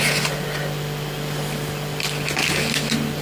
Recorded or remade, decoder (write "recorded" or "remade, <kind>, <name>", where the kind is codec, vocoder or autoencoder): recorded